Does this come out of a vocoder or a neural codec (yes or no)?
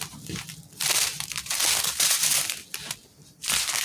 no